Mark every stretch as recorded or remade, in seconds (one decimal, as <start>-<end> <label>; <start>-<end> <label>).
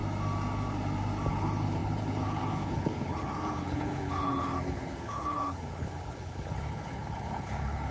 0.0-1.3 recorded; 1.3-7.9 remade